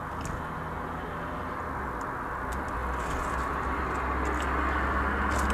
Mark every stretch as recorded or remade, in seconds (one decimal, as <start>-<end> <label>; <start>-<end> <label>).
0.0-2.8 recorded; 2.8-3.8 remade; 3.8-5.5 recorded